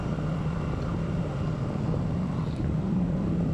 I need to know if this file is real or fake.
real